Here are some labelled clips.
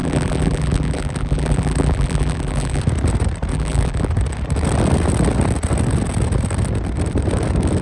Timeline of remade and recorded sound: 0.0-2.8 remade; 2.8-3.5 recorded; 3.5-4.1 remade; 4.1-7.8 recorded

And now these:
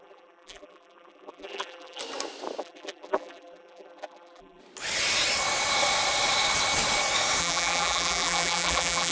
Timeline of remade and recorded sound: 0.0-2.0 remade; 2.0-2.6 recorded; 2.6-4.6 remade; 4.6-7.4 recorded; 7.4-9.1 remade

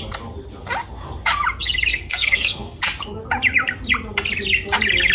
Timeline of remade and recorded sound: 0.0-1.9 recorded; 1.9-2.8 remade; 2.8-5.1 recorded